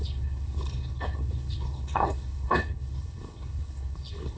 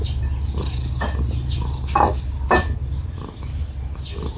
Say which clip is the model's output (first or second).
first